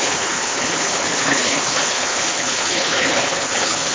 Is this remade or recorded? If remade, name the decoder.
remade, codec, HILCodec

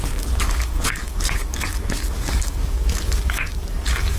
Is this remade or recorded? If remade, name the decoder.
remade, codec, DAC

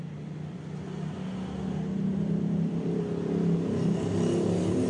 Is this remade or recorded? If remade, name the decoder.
recorded